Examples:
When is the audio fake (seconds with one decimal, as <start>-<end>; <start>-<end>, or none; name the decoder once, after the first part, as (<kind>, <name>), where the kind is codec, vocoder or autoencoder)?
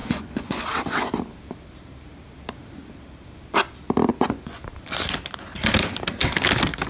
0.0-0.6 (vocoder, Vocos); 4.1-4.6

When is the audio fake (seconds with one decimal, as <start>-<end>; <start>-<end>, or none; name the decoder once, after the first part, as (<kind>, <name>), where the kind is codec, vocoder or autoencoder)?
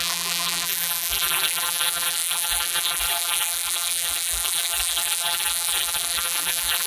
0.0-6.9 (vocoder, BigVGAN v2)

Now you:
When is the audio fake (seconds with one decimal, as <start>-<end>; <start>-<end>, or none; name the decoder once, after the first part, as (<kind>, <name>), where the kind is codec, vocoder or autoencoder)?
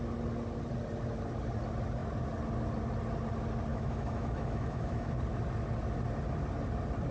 3.7-5.1 (autoencoder, DAC-VAE)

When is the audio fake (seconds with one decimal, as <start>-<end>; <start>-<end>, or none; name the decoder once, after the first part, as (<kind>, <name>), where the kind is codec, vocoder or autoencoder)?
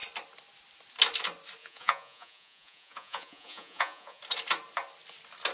1.6-4.2 (vocoder, Vocos)